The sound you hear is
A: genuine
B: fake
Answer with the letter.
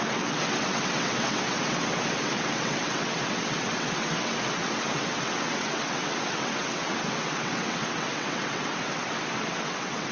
B